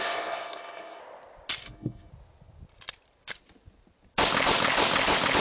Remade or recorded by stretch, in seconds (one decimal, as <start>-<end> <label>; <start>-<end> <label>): 0.0-1.0 remade; 1.0-1.6 recorded; 1.6-2.1 remade; 2.1-5.4 recorded

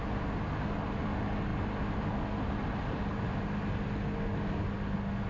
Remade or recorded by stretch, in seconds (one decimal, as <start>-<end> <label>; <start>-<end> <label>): 0.0-5.3 recorded

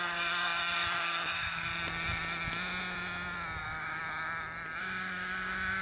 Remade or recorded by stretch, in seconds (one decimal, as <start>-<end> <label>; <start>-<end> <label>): 0.0-1.7 remade; 1.7-3.6 recorded; 3.6-4.0 remade; 4.0-4.8 recorded; 4.8-5.8 remade

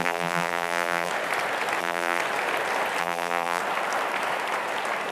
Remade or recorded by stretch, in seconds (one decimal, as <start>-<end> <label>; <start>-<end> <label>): 0.0-1.1 remade; 1.1-1.8 recorded; 1.8-2.2 remade; 2.2-3.0 recorded; 3.0-3.6 remade; 3.6-5.1 recorded

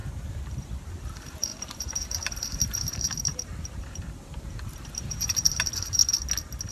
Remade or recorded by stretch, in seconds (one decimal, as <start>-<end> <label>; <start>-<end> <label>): 0.0-0.6 recorded; 0.6-6.0 remade; 6.0-6.7 recorded

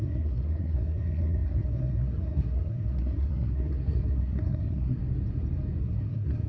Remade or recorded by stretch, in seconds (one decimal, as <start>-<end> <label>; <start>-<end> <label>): 0.0-5.0 remade; 5.0-5.8 recorded; 5.8-6.5 remade